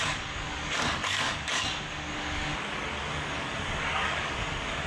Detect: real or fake fake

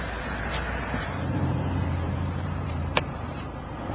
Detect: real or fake fake